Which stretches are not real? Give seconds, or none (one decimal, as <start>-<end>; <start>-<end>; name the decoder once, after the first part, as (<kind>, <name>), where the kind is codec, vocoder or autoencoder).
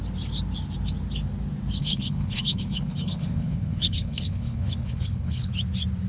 1.8-5.5 (codec, HILCodec)